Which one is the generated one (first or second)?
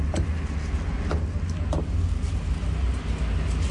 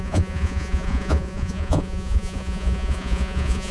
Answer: second